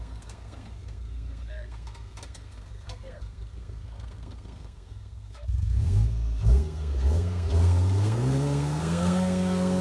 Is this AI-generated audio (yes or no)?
yes